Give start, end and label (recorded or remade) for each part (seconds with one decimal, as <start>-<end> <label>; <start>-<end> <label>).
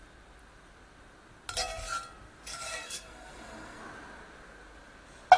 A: 0.0-2.5 recorded; 2.5-3.8 remade; 3.8-5.4 recorded